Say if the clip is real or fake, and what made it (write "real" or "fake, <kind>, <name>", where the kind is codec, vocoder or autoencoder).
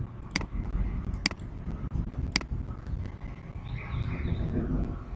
real